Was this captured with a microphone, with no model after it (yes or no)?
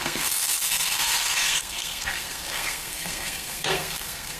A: no